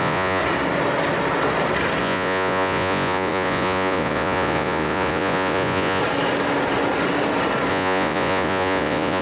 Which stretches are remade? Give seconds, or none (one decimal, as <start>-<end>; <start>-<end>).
0.0-0.4; 2.0-6.0; 7.7-9.2